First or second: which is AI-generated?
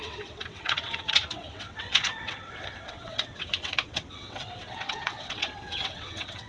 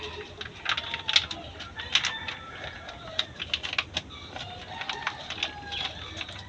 first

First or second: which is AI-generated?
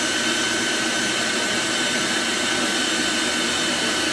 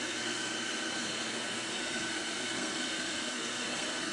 second